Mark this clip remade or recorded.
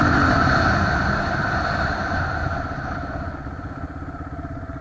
recorded